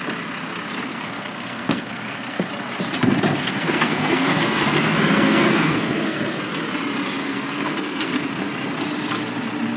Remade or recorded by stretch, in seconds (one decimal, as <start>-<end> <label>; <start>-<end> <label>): 0.0-0.8 recorded; 0.8-2.5 remade; 2.5-3.4 recorded; 3.4-6.4 remade; 6.4-7.2 recorded; 7.2-8.5 remade; 8.5-9.8 recorded